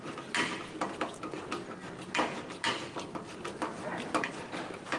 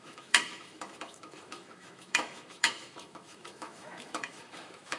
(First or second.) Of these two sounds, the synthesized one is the second